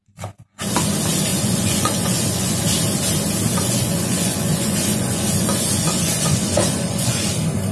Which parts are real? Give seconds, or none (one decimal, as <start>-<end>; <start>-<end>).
0.0-1.3; 2.6-3.5; 7.3-7.7